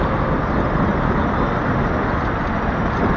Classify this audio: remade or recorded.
recorded